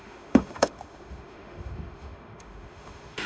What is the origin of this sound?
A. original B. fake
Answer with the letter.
B